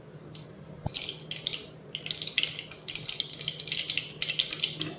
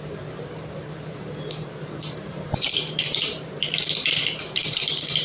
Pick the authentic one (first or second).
first